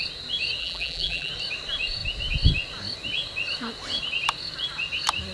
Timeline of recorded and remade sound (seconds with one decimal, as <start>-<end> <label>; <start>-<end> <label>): 0.0-0.6 recorded; 0.6-1.3 remade; 1.3-5.3 recorded